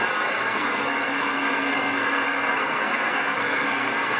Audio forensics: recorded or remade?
remade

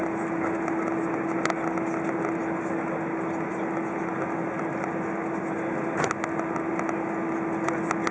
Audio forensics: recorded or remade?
recorded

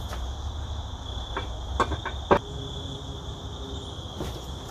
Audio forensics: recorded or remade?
recorded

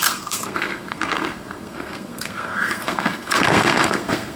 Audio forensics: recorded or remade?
remade